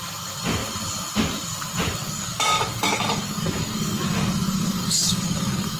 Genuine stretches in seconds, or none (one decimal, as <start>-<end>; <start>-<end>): 0.0-2.0